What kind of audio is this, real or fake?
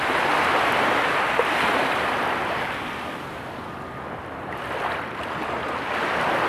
real